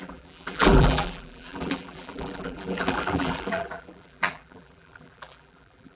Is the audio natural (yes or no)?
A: no